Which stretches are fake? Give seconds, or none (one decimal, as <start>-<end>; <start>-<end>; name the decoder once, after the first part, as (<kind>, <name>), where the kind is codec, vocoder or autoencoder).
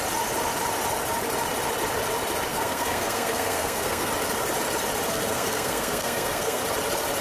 2.5-4.1 (codec, SNAC); 5.1-6.6